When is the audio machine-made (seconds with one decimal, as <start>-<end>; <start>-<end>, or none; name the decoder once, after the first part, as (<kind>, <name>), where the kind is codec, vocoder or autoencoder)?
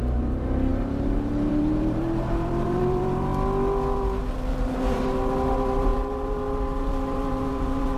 0.0-3.3 (vocoder, BigVGAN v2); 4.5-8.0